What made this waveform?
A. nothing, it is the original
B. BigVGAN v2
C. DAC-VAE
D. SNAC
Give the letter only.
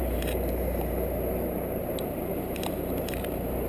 B